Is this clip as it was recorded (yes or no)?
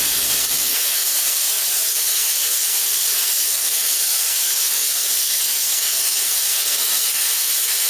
no